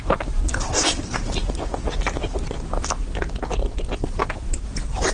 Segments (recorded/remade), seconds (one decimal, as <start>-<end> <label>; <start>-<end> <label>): 0.0-1.1 remade; 1.1-4.2 recorded; 4.2-5.1 remade